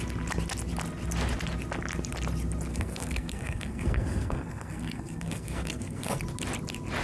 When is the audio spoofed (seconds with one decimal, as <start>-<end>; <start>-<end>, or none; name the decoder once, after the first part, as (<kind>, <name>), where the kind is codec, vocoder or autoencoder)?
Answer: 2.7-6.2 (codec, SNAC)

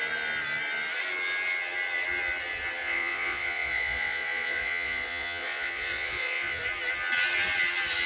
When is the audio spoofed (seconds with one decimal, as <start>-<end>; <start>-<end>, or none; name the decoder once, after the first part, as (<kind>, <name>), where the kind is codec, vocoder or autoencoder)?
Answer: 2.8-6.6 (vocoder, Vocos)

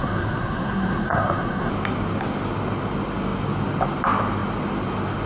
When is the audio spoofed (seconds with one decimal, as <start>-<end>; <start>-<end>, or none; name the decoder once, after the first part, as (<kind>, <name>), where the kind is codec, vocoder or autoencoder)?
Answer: 0.0-1.7 (codec, SNAC)

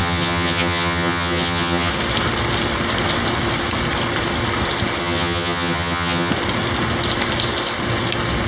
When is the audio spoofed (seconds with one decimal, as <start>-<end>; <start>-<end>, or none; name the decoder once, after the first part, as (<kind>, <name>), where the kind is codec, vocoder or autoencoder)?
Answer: 0.0-1.9 (vocoder, HiFi-GAN); 5.0-6.3